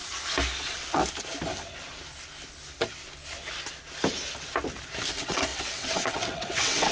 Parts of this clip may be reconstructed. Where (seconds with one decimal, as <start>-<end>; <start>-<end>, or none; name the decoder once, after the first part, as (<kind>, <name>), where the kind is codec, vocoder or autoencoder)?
0.6-1.0 (vocoder, WaveNeXt); 5.1-6.9